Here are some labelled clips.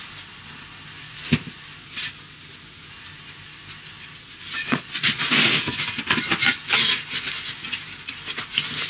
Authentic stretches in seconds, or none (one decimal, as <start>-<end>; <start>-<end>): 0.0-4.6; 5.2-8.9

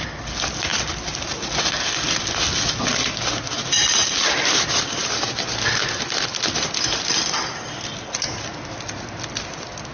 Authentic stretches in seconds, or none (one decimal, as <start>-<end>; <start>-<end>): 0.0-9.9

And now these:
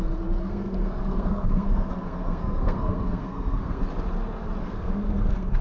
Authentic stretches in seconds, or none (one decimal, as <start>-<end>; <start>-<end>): 0.0-0.4; 3.8-4.6

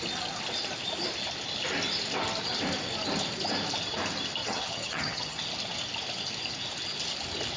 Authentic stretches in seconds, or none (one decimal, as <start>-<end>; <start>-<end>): 0.0-4.4; 5.4-7.6

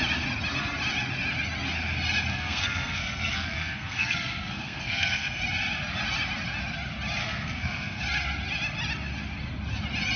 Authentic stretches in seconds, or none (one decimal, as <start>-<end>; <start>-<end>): 0.0-2.3; 5.4-7.2; 8.0-10.2

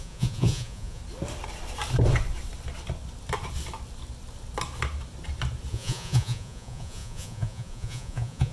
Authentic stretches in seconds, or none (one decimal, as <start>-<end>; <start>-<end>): 1.0-5.7

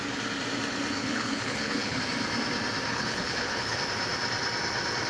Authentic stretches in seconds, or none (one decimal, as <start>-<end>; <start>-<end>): 0.0-1.0; 2.0-2.9; 3.8-5.1